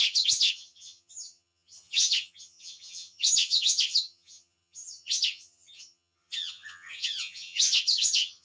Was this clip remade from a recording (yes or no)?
yes